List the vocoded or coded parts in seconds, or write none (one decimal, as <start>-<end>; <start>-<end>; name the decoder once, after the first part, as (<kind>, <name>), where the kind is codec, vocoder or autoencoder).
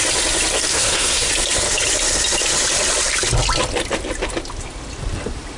0.7-1.3 (codec, SNAC)